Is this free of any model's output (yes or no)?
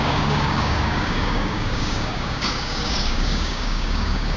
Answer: no